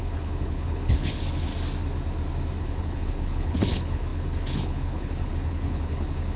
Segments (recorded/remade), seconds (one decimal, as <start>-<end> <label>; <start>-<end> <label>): 0.0-1.5 remade; 1.5-2.6 recorded; 2.6-6.4 remade